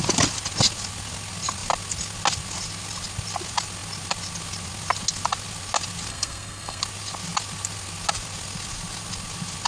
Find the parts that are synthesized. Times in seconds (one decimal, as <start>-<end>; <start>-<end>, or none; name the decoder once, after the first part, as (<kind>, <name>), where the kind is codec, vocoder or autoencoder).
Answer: 6.1-6.8 (codec, SNAC)